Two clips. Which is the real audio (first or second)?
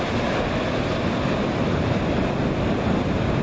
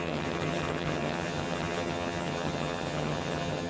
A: first